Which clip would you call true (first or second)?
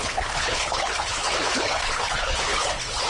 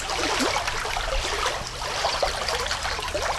second